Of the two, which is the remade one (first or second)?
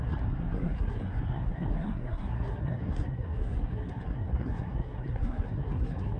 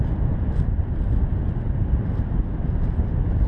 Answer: first